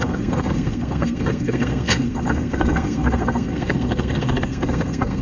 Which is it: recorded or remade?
remade